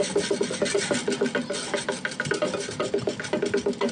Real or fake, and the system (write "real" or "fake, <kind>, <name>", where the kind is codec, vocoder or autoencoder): real